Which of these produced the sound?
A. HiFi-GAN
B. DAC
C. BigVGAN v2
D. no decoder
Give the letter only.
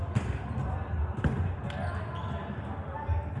D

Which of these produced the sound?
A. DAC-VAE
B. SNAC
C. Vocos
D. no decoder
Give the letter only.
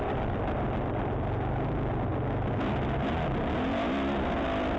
D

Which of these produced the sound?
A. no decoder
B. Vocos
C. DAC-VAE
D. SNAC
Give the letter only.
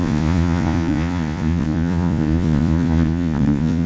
B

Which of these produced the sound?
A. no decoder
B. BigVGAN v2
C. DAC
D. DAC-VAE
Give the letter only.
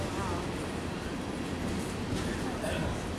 A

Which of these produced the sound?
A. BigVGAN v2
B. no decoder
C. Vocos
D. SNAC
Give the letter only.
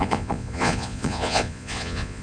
C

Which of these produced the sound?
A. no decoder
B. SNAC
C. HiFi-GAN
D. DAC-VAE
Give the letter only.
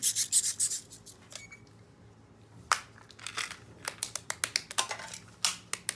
A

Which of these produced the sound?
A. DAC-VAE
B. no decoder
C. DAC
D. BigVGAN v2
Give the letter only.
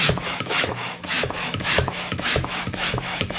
A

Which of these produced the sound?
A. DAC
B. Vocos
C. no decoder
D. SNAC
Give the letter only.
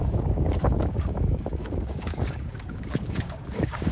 A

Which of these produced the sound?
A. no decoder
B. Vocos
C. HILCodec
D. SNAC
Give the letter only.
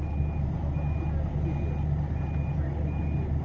A